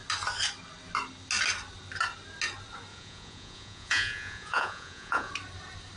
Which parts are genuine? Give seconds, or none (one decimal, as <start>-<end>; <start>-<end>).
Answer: 0.0-2.9; 5.3-6.0